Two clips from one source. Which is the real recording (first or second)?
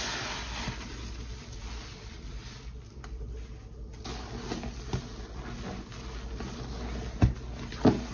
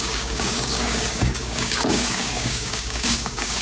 first